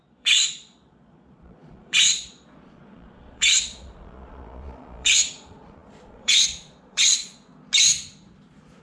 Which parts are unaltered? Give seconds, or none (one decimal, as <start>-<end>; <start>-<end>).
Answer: 7.5-8.8